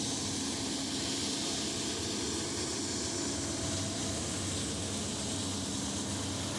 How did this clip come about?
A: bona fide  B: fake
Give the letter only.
A